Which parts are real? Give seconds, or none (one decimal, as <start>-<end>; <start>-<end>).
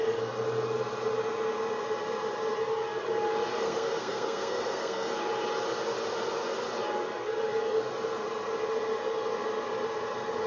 0.0-3.5; 5.2-10.5